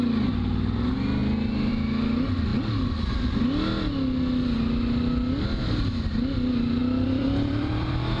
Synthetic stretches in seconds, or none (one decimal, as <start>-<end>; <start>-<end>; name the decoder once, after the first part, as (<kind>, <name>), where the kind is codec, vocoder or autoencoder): 6.8-8.2 (vocoder, BigVGAN v2)